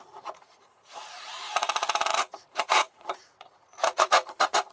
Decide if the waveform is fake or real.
fake